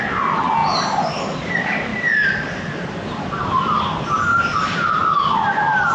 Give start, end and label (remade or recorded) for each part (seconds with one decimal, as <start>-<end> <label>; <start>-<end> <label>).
0.0-5.9 recorded